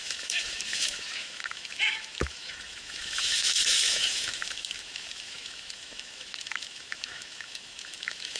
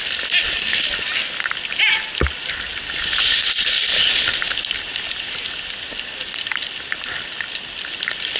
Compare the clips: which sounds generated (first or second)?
first